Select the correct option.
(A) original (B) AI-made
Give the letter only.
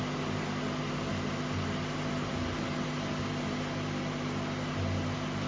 A